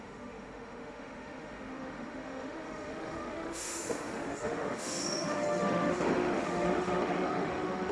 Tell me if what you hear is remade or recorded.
remade